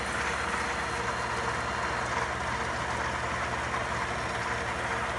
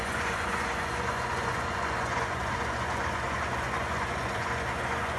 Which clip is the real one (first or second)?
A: first